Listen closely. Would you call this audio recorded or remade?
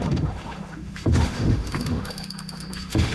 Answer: remade